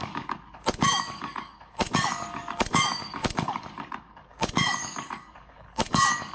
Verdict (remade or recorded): remade